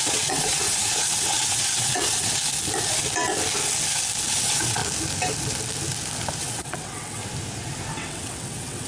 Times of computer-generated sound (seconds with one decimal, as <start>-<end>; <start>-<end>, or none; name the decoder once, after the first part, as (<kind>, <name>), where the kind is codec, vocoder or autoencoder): 0.0-2.4 (vocoder, WaveNeXt); 4.3-4.8; 6.4-7.2; 7.9-8.9